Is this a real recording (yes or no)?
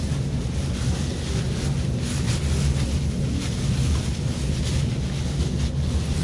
yes